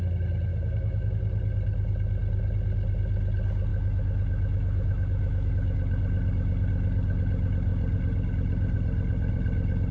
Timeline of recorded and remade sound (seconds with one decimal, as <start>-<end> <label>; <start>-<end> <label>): 0.0-0.5 recorded; 0.5-1.1 remade; 1.1-3.7 recorded; 3.7-5.5 remade; 5.5-9.9 recorded